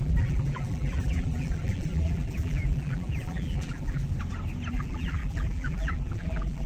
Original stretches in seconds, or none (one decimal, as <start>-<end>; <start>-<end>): 4.1-4.7